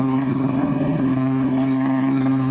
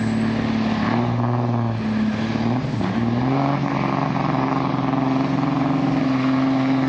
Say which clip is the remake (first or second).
first